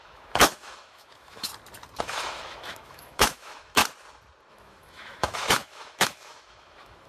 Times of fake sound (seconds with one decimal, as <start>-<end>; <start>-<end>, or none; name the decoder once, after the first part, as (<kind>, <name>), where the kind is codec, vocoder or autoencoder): 0.0-1.5 (autoencoder, DAC-VAE); 2.0-3.8; 4.5-7.1